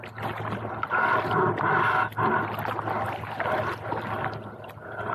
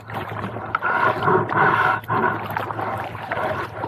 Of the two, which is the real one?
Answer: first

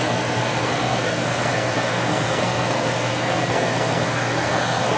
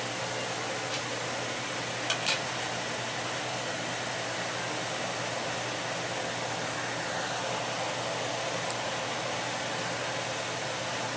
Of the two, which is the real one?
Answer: second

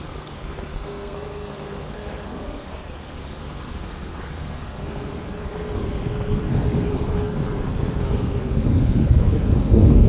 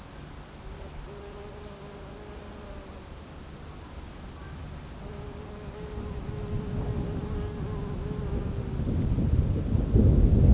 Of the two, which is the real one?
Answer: second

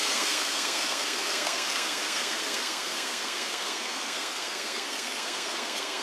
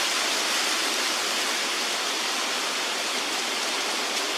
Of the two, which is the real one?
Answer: second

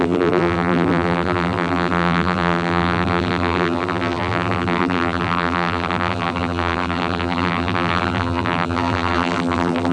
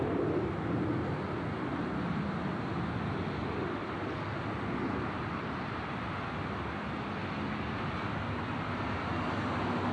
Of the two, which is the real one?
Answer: second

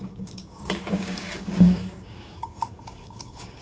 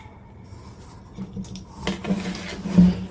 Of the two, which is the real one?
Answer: second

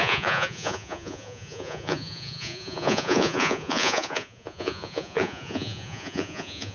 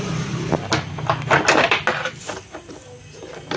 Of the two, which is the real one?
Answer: second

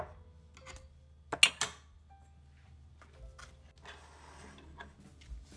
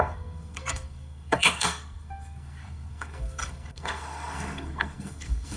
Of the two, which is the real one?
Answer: first